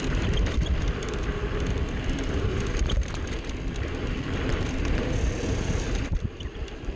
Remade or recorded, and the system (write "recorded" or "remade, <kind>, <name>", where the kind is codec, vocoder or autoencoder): remade, vocoder, BigVGAN v2